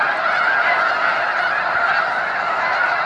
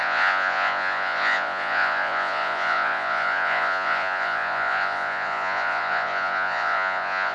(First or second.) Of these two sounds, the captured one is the first